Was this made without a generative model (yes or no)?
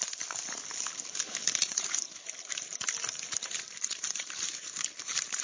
no